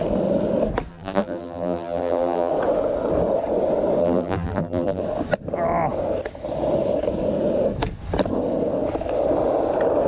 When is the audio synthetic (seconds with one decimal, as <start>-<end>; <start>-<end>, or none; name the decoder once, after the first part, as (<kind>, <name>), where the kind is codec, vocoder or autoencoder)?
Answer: 0.9-2.5 (vocoder, BigVGAN v2); 4.0-5.0